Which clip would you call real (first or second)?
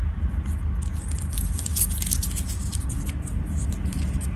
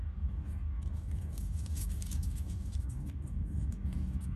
first